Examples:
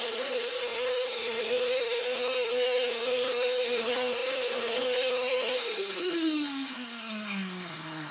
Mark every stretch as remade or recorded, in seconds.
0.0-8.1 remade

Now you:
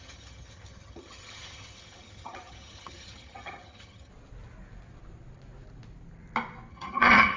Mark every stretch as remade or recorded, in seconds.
0.0-4.1 remade; 4.1-6.7 recorded; 6.7-7.4 remade

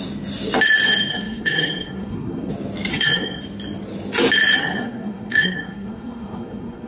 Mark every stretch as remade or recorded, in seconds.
0.0-1.1 recorded; 1.1-2.5 remade; 2.5-2.9 recorded; 2.9-3.4 remade; 3.4-4.6 recorded; 4.6-6.9 remade